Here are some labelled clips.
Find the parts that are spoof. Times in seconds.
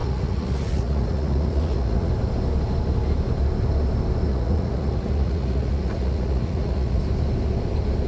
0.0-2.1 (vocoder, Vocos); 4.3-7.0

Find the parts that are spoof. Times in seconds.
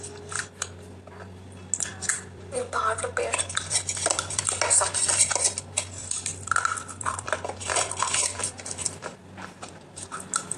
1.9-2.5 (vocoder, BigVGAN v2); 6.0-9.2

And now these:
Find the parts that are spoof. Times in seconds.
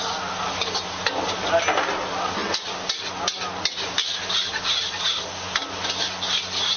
none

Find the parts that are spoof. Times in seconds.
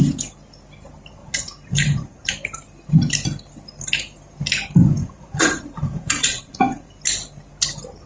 1.2-2.3 (vocoder, Vocos); 5.0-6.9